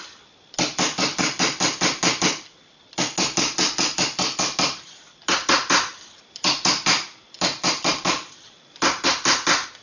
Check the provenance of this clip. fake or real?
real